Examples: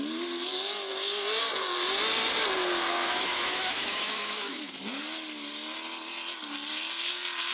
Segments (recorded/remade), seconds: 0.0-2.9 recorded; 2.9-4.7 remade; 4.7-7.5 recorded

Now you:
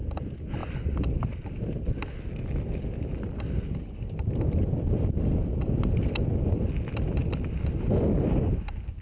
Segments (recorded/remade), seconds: 0.0-9.0 recorded

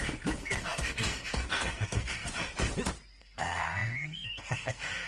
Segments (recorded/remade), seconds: 0.0-2.3 remade; 2.3-3.2 recorded; 3.2-5.1 remade